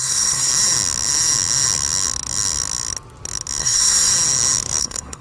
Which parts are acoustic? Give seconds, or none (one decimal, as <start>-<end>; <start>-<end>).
0.5-3.6; 4.1-4.8